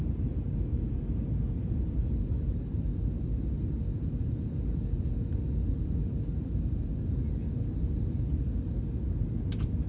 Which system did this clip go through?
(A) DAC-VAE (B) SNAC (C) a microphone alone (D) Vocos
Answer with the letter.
C